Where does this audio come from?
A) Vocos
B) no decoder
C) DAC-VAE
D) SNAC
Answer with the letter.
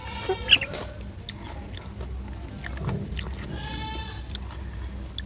B